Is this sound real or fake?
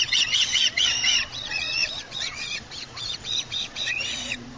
fake